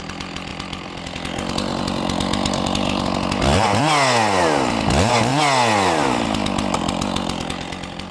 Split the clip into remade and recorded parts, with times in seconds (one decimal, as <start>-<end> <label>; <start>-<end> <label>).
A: 0.0-0.5 recorded; 0.5-3.8 remade; 3.8-8.1 recorded